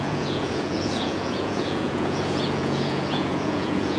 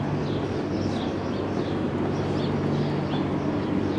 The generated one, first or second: first